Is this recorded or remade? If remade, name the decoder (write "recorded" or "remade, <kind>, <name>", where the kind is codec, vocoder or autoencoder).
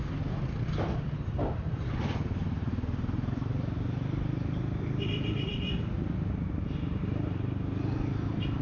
recorded